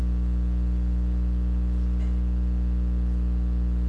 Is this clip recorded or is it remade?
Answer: recorded